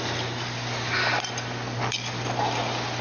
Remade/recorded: recorded